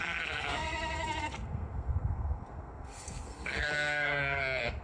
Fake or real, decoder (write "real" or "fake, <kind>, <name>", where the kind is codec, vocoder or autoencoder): fake, codec, SNAC